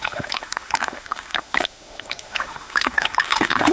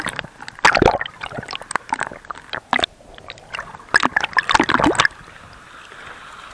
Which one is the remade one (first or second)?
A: first